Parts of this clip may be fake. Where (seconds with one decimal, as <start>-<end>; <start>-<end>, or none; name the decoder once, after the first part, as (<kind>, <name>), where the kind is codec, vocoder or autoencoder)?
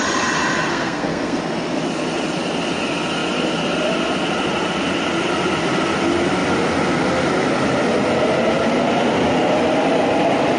0.7-1.4 (codec, SNAC)